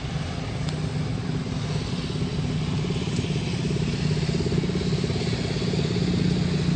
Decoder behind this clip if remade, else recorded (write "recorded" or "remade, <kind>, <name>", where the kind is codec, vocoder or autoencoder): recorded